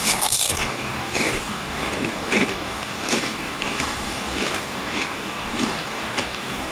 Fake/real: fake